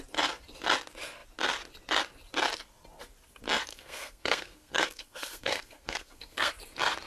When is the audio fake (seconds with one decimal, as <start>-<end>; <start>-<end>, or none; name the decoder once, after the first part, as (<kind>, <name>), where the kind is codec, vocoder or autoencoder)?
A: 3.7-6.5 (codec, SNAC)